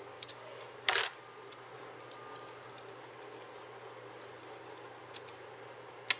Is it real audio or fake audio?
real